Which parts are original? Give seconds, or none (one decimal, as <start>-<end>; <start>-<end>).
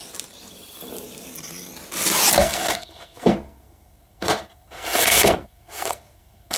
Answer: 0.0-2.4